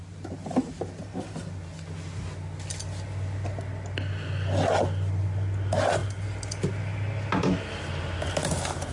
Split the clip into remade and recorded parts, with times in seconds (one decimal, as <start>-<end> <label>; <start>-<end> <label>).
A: 0.0-8.9 recorded

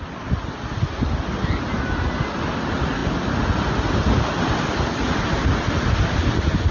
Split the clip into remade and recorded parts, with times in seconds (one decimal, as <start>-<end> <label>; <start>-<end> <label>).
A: 0.0-6.7 recorded

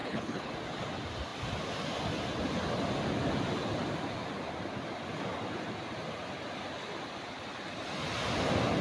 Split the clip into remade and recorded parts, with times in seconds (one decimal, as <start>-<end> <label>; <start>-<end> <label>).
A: 0.0-0.5 remade; 0.5-8.8 recorded

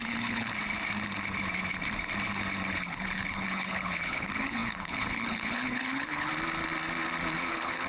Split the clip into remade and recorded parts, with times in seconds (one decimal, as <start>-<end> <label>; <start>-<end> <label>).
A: 0.0-0.5 remade; 0.5-2.7 recorded; 2.7-6.3 remade; 6.3-7.5 recorded; 7.5-7.9 remade

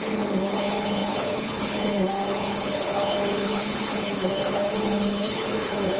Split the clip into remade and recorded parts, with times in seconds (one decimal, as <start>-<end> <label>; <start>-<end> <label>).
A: 0.0-6.0 remade

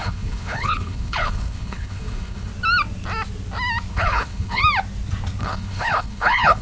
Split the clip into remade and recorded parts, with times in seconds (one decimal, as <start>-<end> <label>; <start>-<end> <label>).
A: 0.0-2.5 remade; 2.5-3.9 recorded; 3.9-4.6 remade; 4.6-5.4 recorded; 5.4-6.6 remade

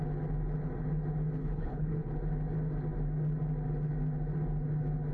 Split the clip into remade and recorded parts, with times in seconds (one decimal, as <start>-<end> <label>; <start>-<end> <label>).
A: 0.0-1.4 recorded; 1.4-2.1 remade; 2.1-5.1 recorded

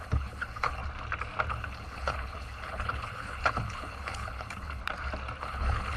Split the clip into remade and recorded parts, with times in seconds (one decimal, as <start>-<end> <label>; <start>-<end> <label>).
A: 0.0-0.8 remade; 0.8-1.5 recorded; 1.5-4.8 remade; 4.8-5.4 recorded; 5.4-6.0 remade